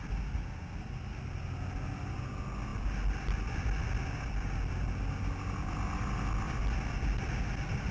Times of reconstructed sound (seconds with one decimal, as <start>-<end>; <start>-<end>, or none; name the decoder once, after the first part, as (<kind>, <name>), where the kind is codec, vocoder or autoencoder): none